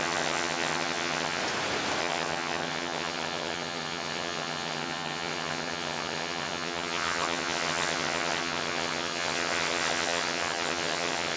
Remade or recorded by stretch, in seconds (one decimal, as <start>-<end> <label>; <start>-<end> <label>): 0.0-1.4 remade; 1.4-2.0 recorded; 2.0-11.4 remade